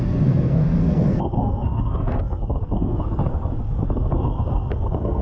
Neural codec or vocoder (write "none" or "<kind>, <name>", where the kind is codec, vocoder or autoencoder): codec, SNAC